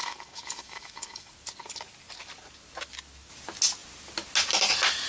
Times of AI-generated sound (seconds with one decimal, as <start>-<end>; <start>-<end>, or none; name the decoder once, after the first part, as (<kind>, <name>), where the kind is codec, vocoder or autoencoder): 0.0-1.3 (autoencoder, DAC-VAE)